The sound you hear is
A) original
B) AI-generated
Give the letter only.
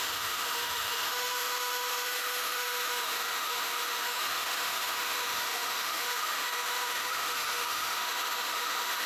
B